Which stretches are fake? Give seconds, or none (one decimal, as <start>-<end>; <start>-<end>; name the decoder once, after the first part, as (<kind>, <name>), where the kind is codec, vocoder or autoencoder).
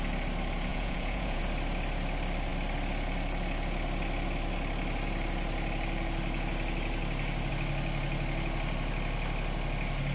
0.7-1.4 (vocoder, Vocos)